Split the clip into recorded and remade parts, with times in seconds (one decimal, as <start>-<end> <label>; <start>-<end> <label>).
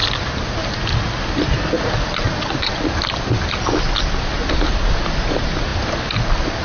0.0-6.6 recorded